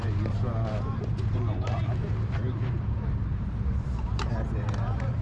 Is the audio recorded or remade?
remade